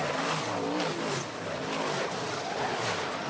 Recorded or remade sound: recorded